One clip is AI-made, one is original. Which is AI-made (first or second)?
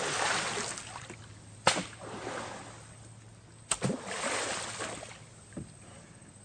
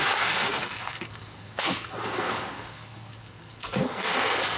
second